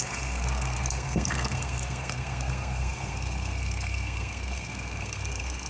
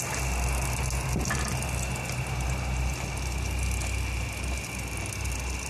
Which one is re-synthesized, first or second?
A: first